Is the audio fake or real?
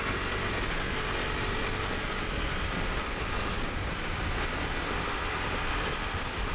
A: fake